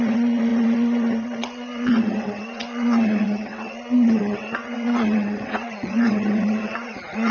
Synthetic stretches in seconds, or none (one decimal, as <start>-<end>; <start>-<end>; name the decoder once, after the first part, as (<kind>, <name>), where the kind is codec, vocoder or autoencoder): 0.0-7.3 (vocoder, WaveNeXt)